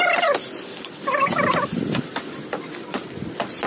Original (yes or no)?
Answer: yes